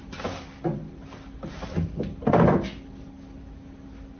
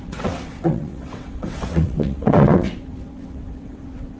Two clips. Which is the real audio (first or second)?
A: first